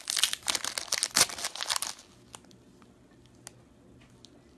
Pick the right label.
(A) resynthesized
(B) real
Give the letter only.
B